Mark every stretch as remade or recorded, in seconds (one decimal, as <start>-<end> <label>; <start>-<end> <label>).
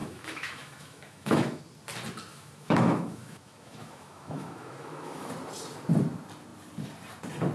0.0-1.6 remade; 1.6-2.3 recorded; 2.3-5.3 remade; 5.3-7.5 recorded